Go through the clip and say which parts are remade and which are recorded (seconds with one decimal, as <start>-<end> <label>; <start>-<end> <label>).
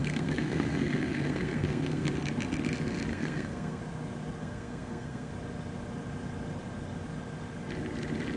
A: 0.0-2.1 remade; 2.1-3.1 recorded; 3.1-3.8 remade; 3.8-4.4 recorded; 4.4-5.3 remade; 5.3-8.4 recorded